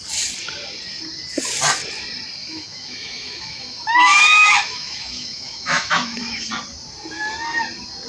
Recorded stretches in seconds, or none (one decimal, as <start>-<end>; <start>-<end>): 0.0-2.4; 6.5-8.1